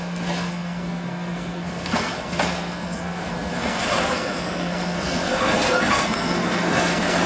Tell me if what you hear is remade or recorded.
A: remade